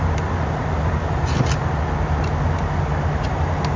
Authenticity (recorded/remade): recorded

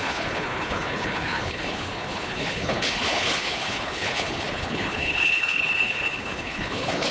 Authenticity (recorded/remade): remade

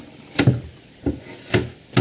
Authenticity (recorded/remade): recorded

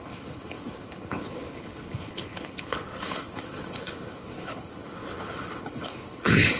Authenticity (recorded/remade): remade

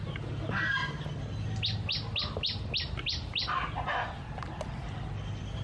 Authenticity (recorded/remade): recorded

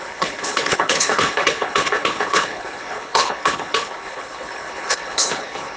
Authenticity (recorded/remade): remade